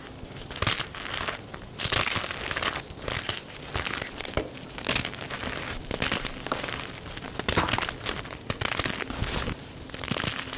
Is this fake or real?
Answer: real